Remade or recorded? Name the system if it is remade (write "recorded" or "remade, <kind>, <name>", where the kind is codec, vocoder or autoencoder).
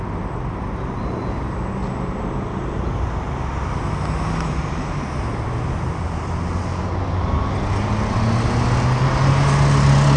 recorded